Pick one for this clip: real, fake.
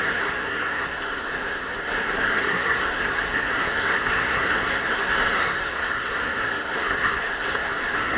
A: fake